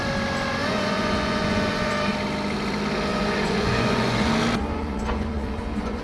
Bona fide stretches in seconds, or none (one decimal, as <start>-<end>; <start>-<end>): 0.0-0.6; 1.9-3.1; 4.3-4.7